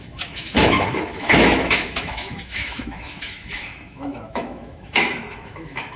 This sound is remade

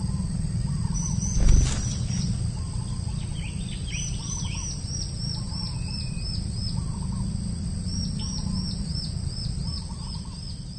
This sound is recorded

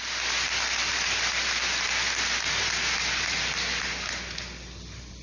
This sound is recorded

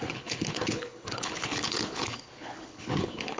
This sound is remade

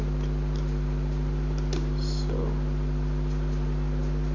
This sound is recorded